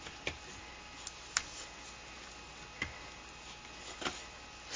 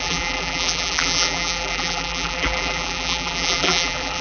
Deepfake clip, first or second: second